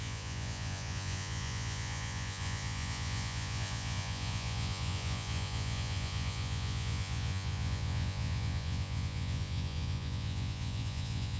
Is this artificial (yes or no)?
yes